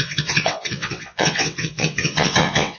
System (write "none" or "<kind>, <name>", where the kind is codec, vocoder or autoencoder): vocoder, WaveNeXt